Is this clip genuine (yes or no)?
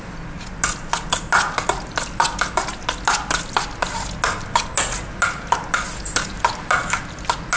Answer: yes